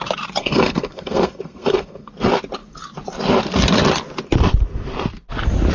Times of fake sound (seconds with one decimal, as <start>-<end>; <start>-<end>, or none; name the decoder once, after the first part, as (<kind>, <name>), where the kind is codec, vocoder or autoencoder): 0.4-2.1 (codec, SNAC)

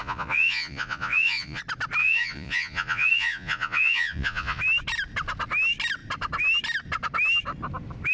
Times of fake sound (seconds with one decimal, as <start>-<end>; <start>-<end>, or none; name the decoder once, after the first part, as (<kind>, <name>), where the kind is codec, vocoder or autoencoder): 0.0-1.6 (vocoder, Vocos); 2.0-4.6

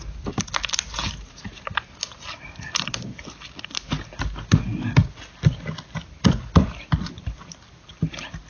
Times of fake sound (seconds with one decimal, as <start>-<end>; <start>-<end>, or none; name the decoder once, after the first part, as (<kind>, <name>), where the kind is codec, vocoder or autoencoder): 5.0-8.5 (vocoder, BigVGAN v2)